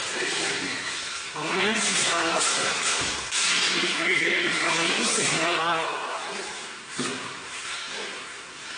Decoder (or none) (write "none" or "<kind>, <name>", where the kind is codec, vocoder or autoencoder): codec, SNAC